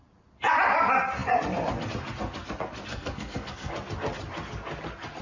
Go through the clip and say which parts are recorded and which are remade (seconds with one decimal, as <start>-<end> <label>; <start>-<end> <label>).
0.0-2.9 recorded; 2.9-3.7 remade; 3.7-5.2 recorded